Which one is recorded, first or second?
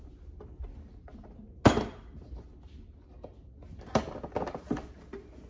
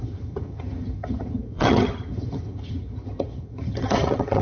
first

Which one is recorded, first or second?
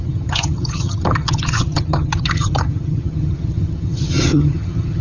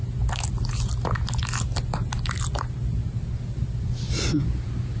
second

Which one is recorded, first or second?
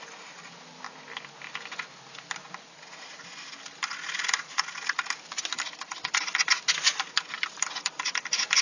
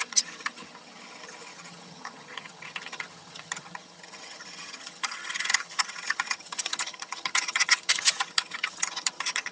first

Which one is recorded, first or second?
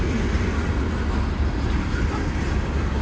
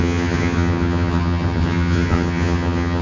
first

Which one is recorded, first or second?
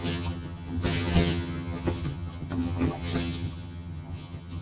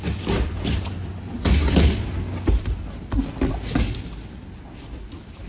second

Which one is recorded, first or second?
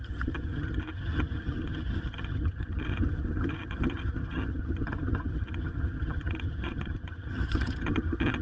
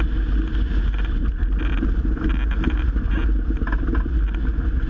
second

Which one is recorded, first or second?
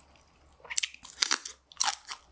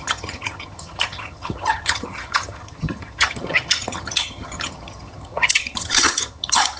first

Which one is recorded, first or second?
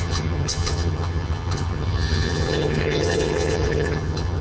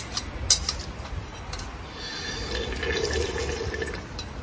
second